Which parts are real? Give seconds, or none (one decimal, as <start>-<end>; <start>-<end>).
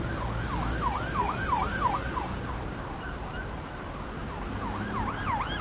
0.0-5.6